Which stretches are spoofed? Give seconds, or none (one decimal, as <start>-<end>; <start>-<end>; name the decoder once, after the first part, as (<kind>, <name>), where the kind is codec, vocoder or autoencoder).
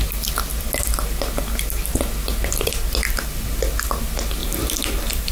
4.4-5.3 (vocoder, BigVGAN v2)